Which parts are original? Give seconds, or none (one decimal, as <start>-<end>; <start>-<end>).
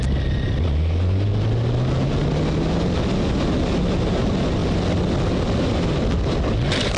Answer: 0.0-7.0